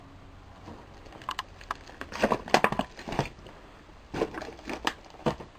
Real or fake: real